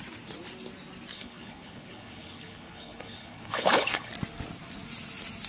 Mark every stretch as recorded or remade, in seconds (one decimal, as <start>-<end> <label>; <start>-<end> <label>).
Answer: 0.0-1.1 recorded; 1.1-4.1 remade; 4.1-5.5 recorded